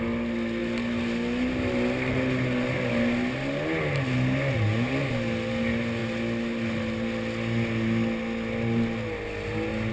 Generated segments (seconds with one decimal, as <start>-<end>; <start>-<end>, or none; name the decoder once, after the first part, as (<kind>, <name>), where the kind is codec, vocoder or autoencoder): none